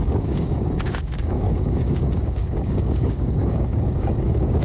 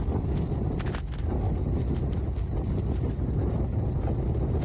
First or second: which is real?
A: second